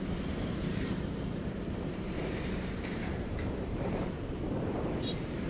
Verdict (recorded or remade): remade